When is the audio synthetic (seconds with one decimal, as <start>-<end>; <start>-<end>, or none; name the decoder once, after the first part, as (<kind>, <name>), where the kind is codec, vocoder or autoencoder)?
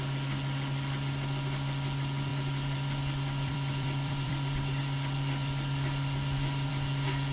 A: 2.3-6.7 (vocoder, BigVGAN v2)